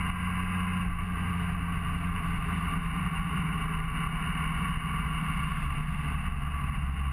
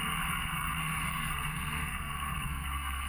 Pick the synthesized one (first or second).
second